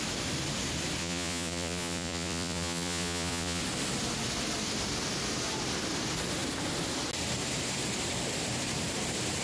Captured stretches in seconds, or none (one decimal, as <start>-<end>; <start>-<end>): 0.0-1.0; 3.6-9.4